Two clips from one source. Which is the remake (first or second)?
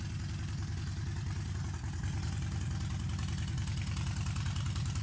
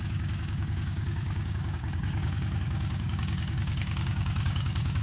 second